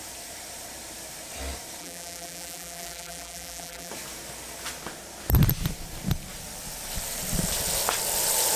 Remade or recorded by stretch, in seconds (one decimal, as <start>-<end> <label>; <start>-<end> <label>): 0.0-1.8 recorded; 1.8-3.9 remade; 3.9-8.6 recorded